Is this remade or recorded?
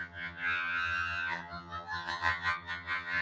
remade